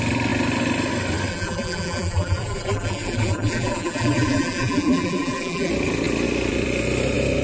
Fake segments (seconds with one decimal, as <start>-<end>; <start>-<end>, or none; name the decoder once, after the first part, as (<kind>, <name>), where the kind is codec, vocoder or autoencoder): 1.3-5.7 (vocoder, BigVGAN v2)